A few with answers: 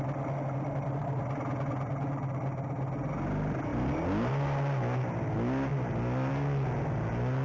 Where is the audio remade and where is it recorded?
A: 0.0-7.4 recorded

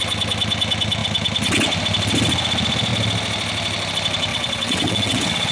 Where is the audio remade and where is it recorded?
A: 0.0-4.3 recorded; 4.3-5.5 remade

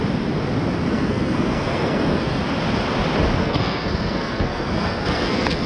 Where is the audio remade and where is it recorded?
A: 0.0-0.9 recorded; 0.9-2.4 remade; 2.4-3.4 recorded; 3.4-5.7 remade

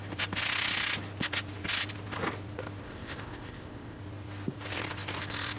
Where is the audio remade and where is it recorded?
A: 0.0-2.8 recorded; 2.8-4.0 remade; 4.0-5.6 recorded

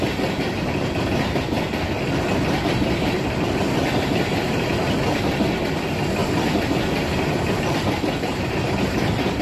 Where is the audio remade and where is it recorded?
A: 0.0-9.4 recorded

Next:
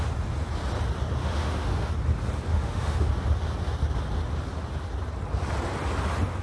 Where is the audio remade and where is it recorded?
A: 0.0-1.2 recorded; 1.2-1.9 remade; 1.9-2.5 recorded; 2.5-3.1 remade; 3.1-6.4 recorded